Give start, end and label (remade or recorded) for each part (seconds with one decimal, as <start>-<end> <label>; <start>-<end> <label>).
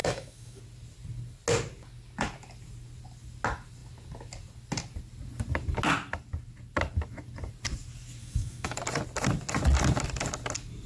0.0-0.6 remade; 0.6-8.2 recorded; 8.2-8.8 remade; 8.8-10.9 recorded